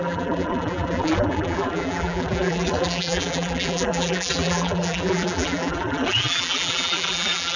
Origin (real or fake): fake